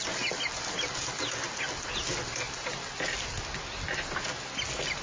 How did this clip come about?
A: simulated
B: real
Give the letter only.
B